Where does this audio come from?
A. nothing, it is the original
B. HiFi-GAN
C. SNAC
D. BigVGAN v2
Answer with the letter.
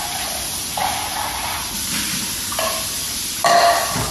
A